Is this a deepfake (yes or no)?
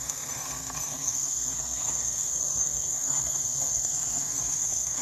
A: yes